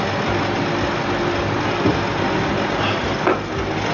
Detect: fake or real real